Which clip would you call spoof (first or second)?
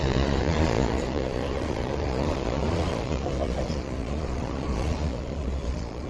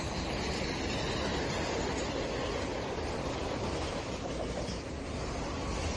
first